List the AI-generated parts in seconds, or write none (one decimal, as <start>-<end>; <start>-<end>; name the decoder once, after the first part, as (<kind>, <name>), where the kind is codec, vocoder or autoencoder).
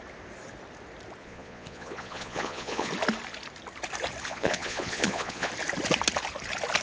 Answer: 1.2-2.9 (vocoder, Vocos); 4.3-5.5